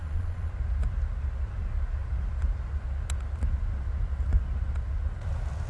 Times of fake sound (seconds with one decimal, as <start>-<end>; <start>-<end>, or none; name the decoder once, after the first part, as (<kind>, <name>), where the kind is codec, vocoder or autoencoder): 0.0-0.5 (vocoder, Vocos)